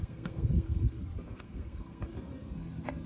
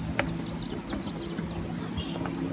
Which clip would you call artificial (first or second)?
first